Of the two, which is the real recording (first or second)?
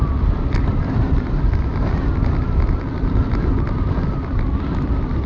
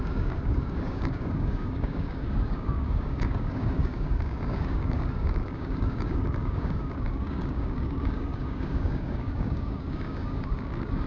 first